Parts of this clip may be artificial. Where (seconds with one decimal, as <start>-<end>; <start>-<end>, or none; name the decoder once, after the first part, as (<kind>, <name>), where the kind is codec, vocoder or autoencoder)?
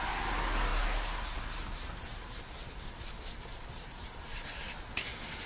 3.5-5.0 (vocoder, BigVGAN v2)